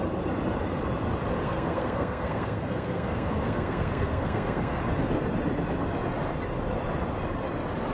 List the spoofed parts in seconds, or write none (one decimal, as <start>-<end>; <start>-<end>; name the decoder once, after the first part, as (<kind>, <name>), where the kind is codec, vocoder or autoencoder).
1.4-4.8 (codec, SNAC)